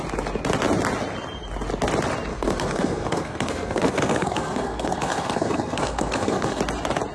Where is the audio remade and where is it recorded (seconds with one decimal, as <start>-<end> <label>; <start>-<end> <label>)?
0.0-2.3 recorded; 2.3-6.6 remade; 6.6-7.1 recorded